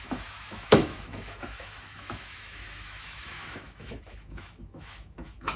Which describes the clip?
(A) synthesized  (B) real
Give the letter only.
A